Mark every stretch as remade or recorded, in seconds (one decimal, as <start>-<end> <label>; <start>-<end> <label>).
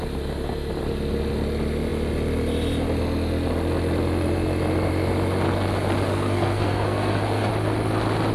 0.0-6.1 recorded; 6.1-7.5 remade; 7.5-8.3 recorded